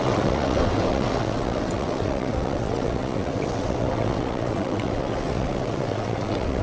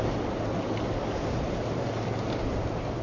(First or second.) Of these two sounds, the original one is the second